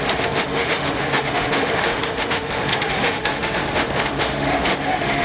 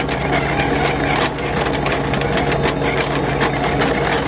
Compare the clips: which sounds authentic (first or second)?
second